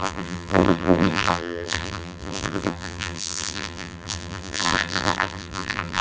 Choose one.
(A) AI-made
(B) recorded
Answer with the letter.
A